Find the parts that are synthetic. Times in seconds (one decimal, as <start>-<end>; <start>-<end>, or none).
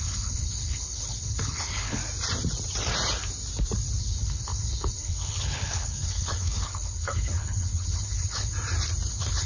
0.0-2.0; 4.0-8.5; 9.1-9.5